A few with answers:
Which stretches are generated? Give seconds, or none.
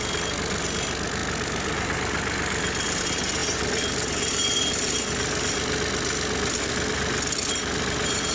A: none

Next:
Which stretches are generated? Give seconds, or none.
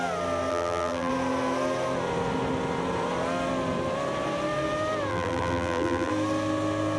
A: 0.5-1.1 (vocoder, BigVGAN v2); 5.1-6.1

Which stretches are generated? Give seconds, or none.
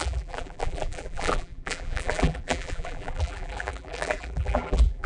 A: 0.0-5.1 (vocoder, BigVGAN v2)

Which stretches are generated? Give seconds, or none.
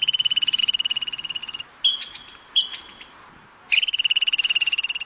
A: none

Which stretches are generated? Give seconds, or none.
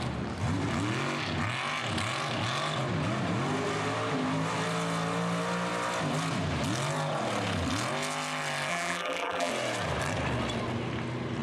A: 8.7-9.5 (vocoder, BigVGAN v2)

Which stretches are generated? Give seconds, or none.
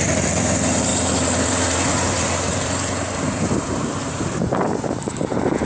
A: 0.0-5.7 (vocoder, BigVGAN v2)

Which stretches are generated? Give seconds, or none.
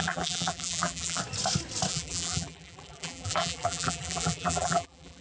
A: 0.0-1.2 (vocoder, BigVGAN v2); 1.9-5.2